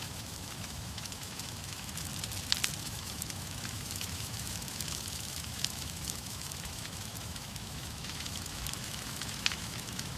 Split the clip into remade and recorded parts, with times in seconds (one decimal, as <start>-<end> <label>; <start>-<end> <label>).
0.0-2.1 remade; 2.1-2.8 recorded; 2.8-10.2 remade